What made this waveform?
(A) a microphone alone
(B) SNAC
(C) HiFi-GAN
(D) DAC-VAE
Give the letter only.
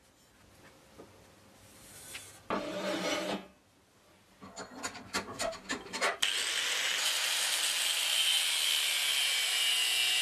A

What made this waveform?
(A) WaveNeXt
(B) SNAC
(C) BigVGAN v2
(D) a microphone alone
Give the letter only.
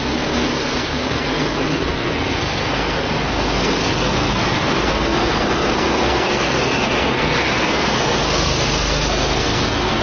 B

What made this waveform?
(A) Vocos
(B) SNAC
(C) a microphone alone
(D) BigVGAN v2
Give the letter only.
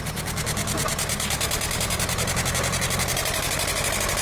C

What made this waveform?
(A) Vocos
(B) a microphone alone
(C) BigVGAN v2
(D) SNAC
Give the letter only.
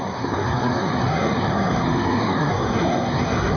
D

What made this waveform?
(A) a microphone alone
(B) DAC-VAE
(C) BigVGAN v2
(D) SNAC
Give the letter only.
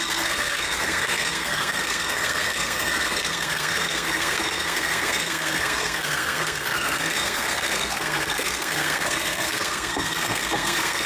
D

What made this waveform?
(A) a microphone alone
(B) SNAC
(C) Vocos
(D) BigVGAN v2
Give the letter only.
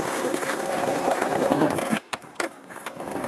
B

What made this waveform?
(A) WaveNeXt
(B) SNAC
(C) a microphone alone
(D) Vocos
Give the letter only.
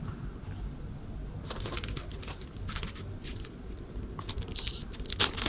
C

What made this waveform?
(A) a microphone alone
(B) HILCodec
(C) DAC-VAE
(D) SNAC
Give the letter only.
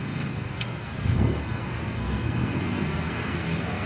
D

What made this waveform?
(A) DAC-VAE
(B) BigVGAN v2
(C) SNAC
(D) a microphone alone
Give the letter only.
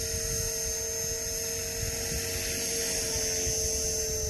D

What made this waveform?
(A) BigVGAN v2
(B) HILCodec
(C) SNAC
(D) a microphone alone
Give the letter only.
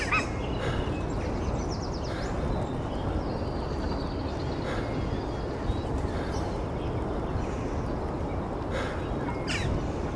D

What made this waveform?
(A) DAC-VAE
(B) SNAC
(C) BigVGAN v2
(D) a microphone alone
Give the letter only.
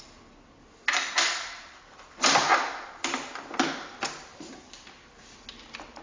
D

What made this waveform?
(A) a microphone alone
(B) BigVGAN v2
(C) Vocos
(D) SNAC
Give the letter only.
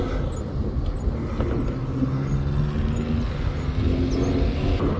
A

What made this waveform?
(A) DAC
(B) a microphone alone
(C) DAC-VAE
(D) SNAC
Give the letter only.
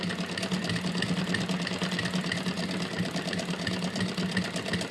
B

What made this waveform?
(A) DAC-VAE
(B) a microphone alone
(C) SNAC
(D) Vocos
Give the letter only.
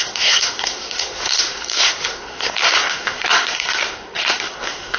C